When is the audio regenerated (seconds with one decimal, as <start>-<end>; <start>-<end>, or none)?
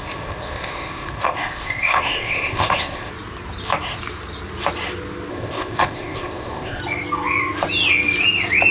0.0-3.1; 5.3-6.8